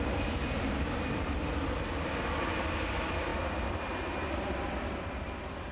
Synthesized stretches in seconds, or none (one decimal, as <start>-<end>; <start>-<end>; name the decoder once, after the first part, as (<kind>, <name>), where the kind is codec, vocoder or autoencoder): none